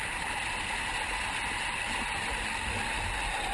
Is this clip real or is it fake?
real